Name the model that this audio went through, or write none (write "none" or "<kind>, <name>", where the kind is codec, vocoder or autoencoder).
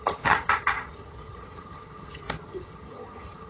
vocoder, HiFi-GAN